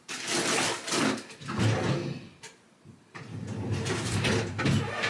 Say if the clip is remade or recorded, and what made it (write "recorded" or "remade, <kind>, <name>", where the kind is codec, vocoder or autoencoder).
recorded